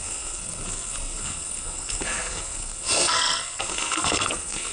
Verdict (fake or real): fake